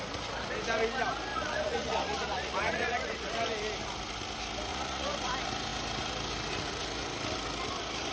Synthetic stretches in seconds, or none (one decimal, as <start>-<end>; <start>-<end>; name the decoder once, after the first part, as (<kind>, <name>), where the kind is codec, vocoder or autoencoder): 1.3-3.3 (vocoder, Vocos); 4.7-5.3